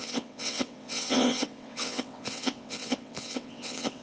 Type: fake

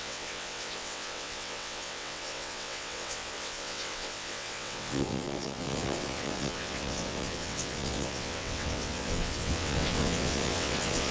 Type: fake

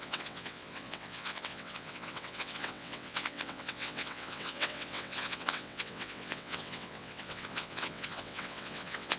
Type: fake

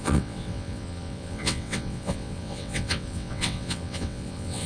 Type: fake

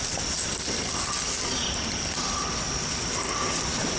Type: real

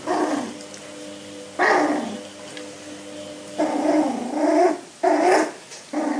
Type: real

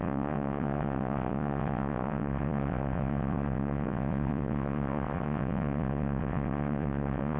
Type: fake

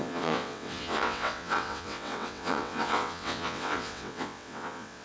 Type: fake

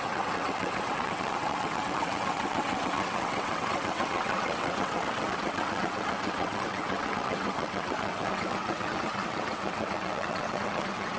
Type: fake